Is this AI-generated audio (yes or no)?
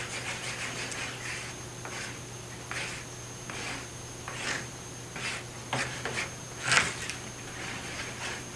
no